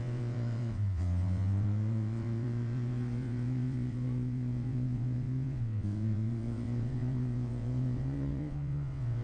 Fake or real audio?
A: fake